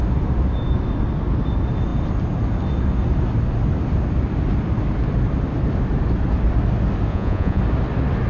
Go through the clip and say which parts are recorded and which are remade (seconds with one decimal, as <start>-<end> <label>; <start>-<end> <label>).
0.0-7.1 recorded; 7.1-7.6 remade; 7.6-8.3 recorded